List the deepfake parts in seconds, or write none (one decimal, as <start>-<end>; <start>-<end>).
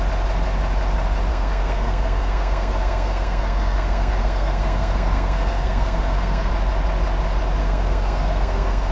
1.3-6.5; 7.6-8.9